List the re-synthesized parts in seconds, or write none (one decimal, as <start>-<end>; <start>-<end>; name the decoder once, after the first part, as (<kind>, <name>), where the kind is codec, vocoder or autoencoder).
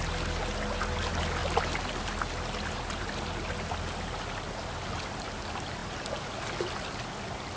none